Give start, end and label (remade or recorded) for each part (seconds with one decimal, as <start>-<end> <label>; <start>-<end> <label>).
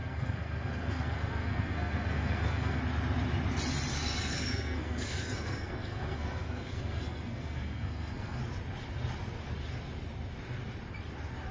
0.0-2.8 remade; 2.8-3.9 recorded; 3.9-8.4 remade; 8.4-11.5 recorded